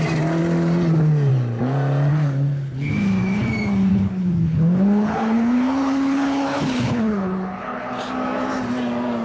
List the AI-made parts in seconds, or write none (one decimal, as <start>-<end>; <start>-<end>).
2.1-2.9; 3.9-8.1